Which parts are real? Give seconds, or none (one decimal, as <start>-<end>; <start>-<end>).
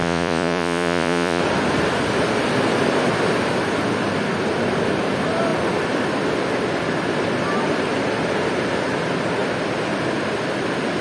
1.4-11.0